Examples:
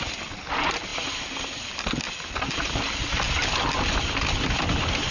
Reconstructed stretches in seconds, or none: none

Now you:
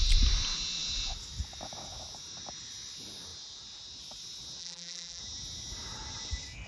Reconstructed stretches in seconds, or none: 4.6-5.2 (vocoder, BigVGAN v2)

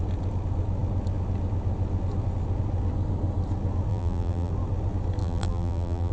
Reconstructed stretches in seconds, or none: 3.9-4.5 (vocoder, BigVGAN v2); 5.2-6.1

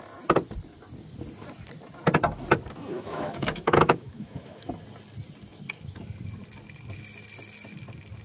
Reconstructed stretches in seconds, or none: 2.9-4.7 (autoencoder, DAC-VAE)

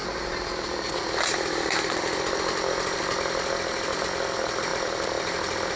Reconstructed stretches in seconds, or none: 4.7-5.8 (vocoder, BigVGAN v2)